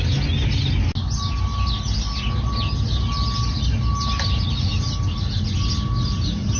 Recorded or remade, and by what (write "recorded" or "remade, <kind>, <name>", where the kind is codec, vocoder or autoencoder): recorded